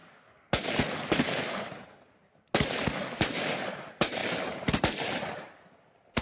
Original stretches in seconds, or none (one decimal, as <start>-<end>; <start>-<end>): 0.0-6.2